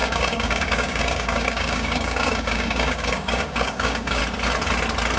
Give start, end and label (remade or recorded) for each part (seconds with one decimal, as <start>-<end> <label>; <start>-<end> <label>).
0.0-4.2 remade; 4.2-5.2 recorded